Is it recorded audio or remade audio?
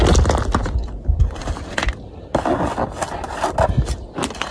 recorded